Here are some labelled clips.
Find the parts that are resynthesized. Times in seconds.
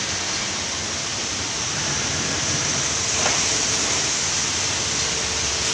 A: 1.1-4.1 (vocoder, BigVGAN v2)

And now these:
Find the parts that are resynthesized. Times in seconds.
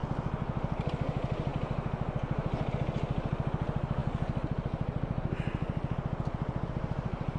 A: none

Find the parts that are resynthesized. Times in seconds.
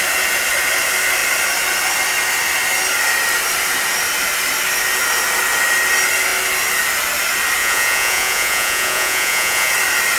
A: 7.6-9.7 (vocoder, Vocos)